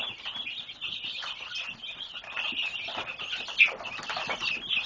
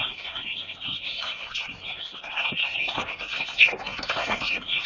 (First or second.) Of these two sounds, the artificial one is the second